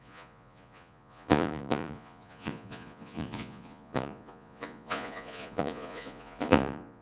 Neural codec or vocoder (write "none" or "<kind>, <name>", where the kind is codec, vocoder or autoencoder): vocoder, Vocos